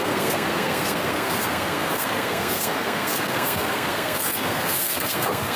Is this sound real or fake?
fake